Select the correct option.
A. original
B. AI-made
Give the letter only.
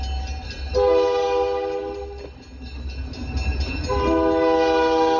A